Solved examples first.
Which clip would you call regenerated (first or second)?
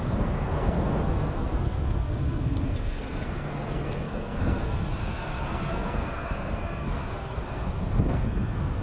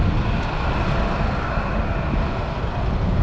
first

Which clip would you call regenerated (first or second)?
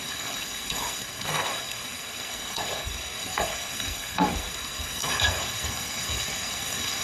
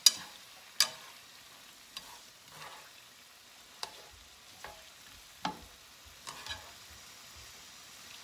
first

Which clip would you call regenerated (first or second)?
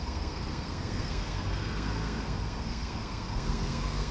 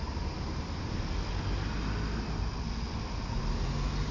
first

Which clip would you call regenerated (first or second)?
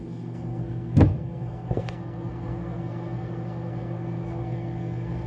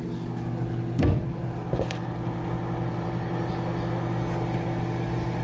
first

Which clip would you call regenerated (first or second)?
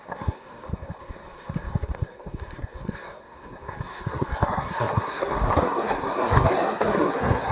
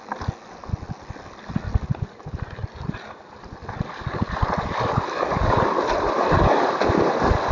first